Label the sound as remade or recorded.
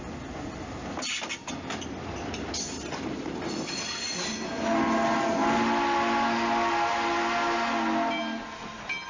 recorded